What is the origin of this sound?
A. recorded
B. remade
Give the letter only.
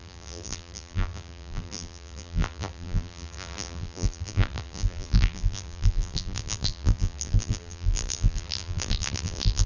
B